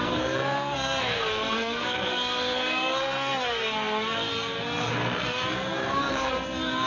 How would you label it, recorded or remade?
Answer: remade